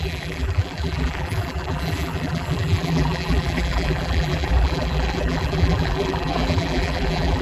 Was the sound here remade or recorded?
remade